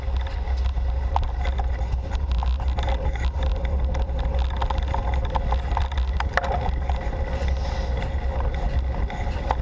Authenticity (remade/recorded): recorded